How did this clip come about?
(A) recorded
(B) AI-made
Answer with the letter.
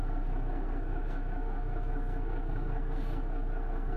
B